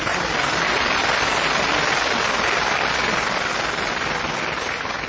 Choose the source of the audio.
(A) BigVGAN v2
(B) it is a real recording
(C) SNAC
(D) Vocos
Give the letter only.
B